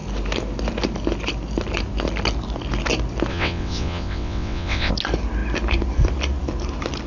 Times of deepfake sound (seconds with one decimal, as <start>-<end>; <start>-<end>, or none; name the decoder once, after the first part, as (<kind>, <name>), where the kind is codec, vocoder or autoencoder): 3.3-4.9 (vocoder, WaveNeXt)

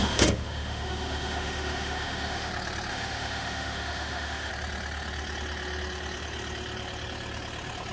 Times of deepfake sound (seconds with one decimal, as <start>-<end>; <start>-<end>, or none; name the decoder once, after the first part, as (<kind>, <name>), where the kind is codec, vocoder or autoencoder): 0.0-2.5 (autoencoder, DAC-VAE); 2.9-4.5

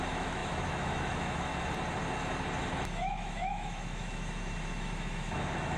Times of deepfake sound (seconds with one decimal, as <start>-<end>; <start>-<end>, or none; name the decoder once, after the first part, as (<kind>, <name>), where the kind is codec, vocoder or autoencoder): 0.0-1.5 (autoencoder, DAC-VAE); 2.7-5.8

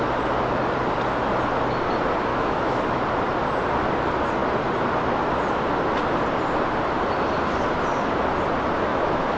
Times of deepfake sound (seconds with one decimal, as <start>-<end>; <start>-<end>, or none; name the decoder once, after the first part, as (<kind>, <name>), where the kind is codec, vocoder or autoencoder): 2.3-3.0 (autoencoder, DAC-VAE); 8.9-9.4

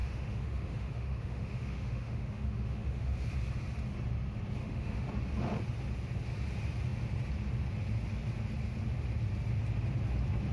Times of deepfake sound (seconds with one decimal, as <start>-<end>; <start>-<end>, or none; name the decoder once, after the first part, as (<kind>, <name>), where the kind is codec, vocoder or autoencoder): 0.0-3.3 (autoencoder, DAC-VAE); 4.6-5.1

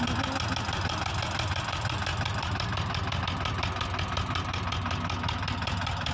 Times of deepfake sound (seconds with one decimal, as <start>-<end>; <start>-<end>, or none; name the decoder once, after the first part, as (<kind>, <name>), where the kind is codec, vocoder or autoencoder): none

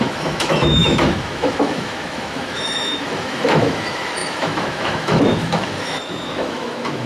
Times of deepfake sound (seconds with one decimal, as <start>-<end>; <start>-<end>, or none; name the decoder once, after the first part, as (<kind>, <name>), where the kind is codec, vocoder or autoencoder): 0.0-7.1 (autoencoder, DAC-VAE)